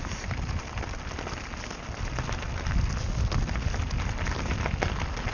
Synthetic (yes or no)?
no